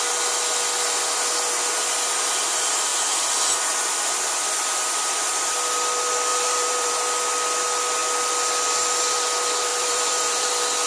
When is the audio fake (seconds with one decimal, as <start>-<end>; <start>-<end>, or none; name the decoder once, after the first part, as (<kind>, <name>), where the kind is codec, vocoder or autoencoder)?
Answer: 6.3-6.9 (vocoder, BigVGAN v2); 9.7-10.5